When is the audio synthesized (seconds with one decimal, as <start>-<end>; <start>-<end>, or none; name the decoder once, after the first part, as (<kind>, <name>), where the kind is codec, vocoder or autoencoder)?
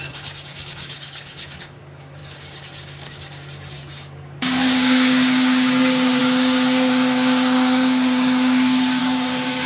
0.0-9.7 (codec, DAC)